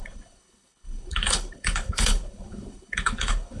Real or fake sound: fake